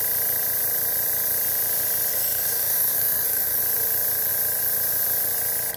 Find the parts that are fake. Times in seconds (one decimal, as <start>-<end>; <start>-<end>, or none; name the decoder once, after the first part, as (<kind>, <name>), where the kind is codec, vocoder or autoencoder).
2.1-3.6 (codec, SNAC)